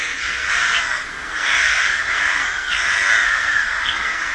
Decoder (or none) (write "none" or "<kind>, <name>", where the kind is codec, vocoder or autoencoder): codec, SNAC